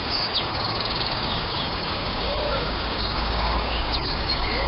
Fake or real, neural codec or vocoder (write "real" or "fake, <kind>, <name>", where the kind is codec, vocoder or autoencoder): fake, codec, DAC